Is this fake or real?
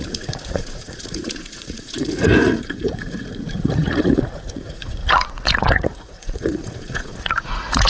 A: fake